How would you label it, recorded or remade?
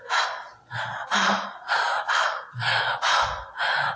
recorded